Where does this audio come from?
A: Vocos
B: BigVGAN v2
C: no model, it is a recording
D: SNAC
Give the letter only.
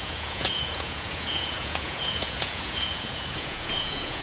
A